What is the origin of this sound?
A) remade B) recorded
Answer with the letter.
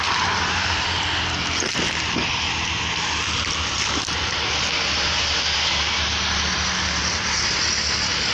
B